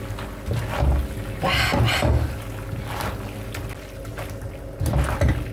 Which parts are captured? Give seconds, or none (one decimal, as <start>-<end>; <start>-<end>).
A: 0.0-5.5